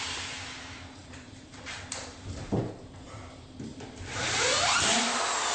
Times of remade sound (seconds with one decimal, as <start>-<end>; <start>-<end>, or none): 1.0-2.7; 3.7-5.1